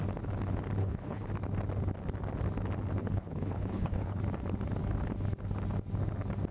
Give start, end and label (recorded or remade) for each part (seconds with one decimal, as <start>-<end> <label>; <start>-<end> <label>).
0.0-0.8 recorded; 0.8-1.3 remade; 1.3-3.0 recorded; 3.0-4.2 remade; 4.2-6.5 recorded